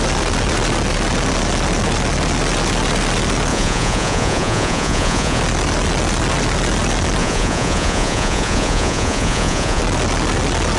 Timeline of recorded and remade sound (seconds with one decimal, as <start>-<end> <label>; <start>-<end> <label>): 0.0-3.5 recorded; 3.5-5.4 remade; 5.4-7.2 recorded; 7.2-9.8 remade; 9.8-10.8 recorded